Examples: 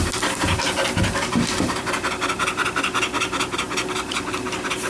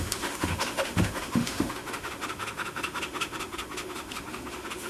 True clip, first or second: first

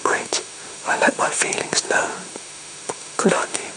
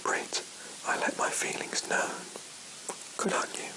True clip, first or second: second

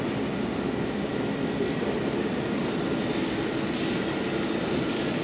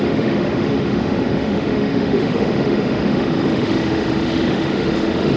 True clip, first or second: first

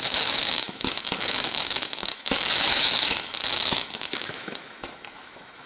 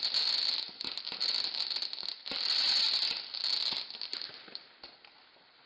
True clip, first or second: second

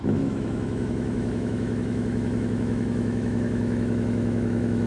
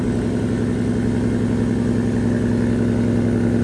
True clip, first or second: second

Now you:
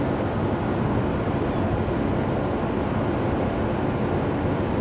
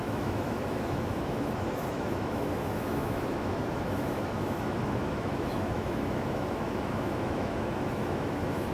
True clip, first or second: first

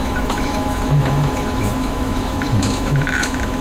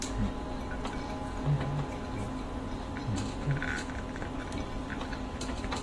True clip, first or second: second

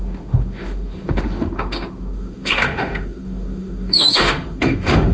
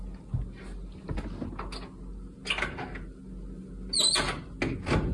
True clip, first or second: second